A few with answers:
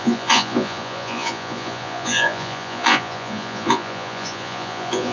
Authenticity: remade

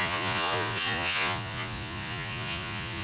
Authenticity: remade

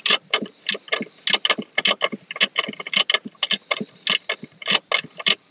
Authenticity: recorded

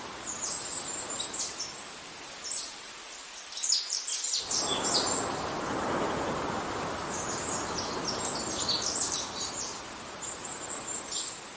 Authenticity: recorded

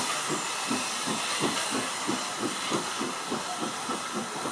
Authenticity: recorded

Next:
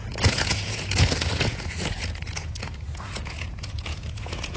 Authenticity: remade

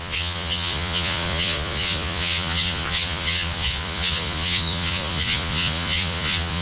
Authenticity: remade